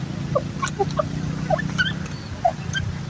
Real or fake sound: real